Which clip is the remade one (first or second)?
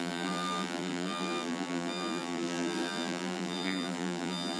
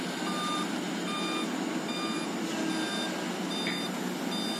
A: first